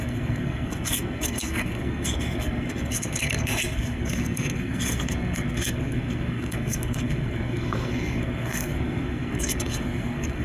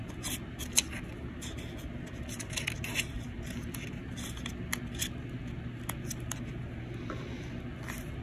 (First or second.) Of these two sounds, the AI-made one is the first